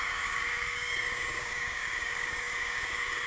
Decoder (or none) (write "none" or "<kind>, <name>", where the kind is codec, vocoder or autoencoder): codec, DAC